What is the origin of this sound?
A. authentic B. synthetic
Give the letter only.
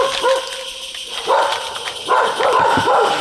A